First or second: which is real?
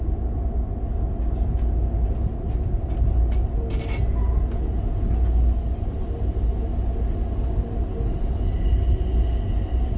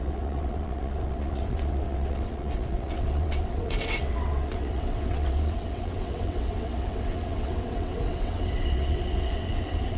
first